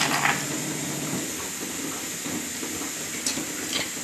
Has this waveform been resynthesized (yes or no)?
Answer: no